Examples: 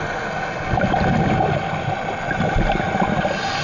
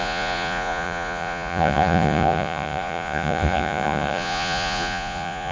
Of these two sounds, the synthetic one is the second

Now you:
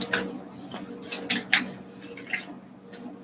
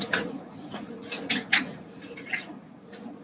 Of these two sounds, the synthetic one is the second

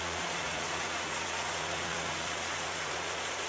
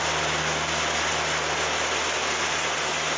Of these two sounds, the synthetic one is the first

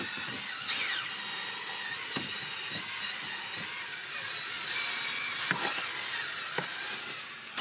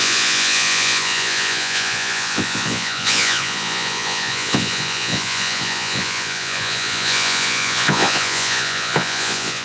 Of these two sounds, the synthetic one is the second